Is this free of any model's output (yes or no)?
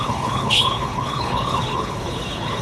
no